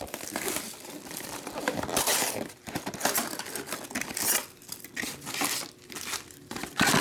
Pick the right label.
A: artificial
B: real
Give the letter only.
A